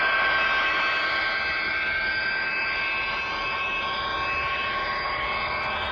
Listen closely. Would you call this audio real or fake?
real